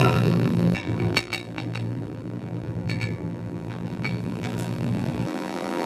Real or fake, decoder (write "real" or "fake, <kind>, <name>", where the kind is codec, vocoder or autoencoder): fake, vocoder, BigVGAN v2